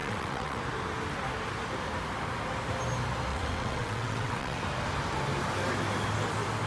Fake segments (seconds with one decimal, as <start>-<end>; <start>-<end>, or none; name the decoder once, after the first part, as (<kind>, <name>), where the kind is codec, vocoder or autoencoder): 0.0-0.6 (vocoder, WaveNeXt); 3.3-4.6